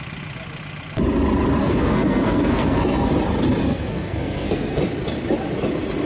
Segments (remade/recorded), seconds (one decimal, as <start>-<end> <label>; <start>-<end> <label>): 0.0-1.6 recorded; 1.6-3.1 remade; 3.1-3.6 recorded; 3.6-4.8 remade; 4.8-6.1 recorded